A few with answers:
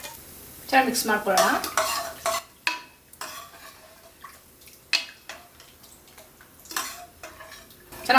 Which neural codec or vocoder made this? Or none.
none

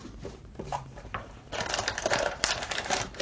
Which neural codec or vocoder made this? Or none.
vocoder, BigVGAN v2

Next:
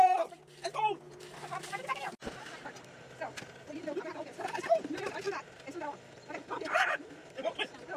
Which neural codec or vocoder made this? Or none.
none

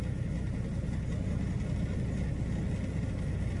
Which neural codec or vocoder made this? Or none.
none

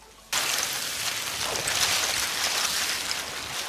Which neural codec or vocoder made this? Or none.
none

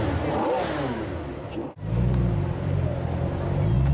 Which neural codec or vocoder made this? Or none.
none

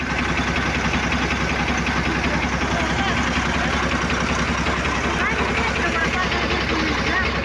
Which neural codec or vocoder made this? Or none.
none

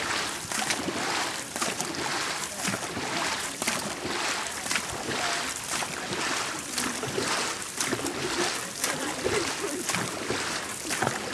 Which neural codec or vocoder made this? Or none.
vocoder, BigVGAN v2